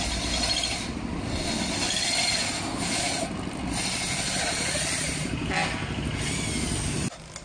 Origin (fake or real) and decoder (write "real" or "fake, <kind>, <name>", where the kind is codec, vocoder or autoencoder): real